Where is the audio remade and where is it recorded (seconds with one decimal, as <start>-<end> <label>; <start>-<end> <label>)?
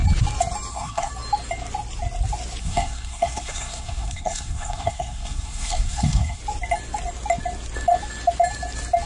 0.0-0.7 recorded; 0.7-1.1 remade; 1.1-2.6 recorded; 2.6-6.4 remade; 6.4-9.1 recorded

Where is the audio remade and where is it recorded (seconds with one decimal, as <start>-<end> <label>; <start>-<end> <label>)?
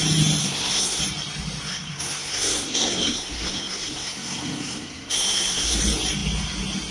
0.0-0.4 recorded; 0.4-1.0 remade; 1.0-1.7 recorded; 1.7-5.8 remade; 5.8-6.9 recorded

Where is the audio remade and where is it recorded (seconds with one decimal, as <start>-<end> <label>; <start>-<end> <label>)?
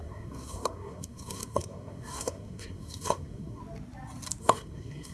0.0-3.6 remade; 3.6-4.4 recorded; 4.4-5.1 remade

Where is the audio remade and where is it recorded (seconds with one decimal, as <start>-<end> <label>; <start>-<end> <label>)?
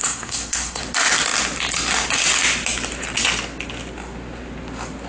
0.0-0.8 remade; 0.8-5.1 recorded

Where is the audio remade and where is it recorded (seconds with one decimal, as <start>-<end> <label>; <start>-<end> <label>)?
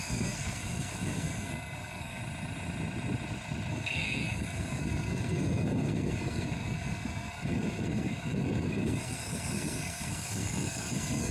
0.0-2.2 remade; 2.2-3.7 recorded; 3.7-11.3 remade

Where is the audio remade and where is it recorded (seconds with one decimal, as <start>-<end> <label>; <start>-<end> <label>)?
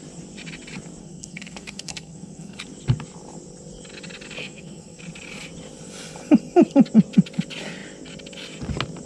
0.0-1.0 recorded; 1.0-2.6 remade; 2.6-4.4 recorded; 4.4-5.0 remade; 5.0-9.1 recorded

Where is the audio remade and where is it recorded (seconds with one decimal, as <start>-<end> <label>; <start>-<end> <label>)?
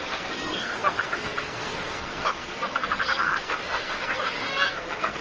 0.0-5.2 remade